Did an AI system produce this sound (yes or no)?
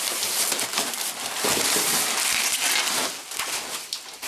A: no